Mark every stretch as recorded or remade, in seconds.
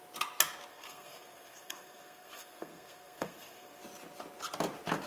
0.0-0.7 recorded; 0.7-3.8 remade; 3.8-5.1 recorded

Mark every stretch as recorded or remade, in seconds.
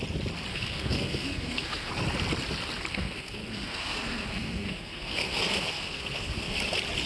0.0-0.5 recorded; 0.5-1.9 remade; 1.9-2.9 recorded; 2.9-6.6 remade; 6.6-7.1 recorded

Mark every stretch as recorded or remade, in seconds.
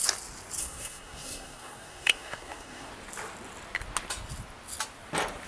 0.0-0.6 recorded; 0.6-2.9 remade; 2.9-5.5 recorded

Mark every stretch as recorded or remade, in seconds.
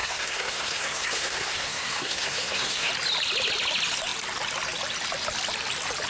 0.0-2.9 remade; 2.9-6.1 recorded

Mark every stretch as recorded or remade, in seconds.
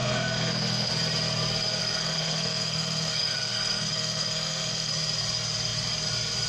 0.0-0.9 remade; 0.9-1.8 recorded; 1.8-4.9 remade; 4.9-6.5 recorded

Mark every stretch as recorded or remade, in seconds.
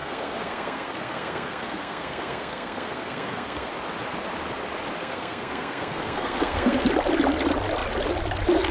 0.0-3.7 remade; 3.7-5.0 recorded; 5.0-6.9 remade; 6.9-8.7 recorded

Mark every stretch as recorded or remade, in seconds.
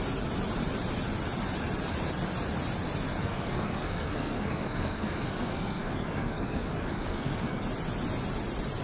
0.0-3.2 recorded; 3.2-7.6 remade; 7.6-8.8 recorded